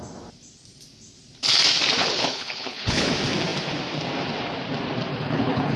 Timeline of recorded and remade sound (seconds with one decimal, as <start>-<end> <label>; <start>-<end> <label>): 0.0-2.0 recorded; 2.0-3.1 remade; 3.1-5.1 recorded; 5.1-5.8 remade